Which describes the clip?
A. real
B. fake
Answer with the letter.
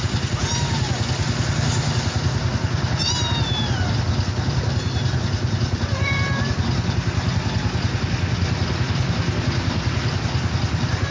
A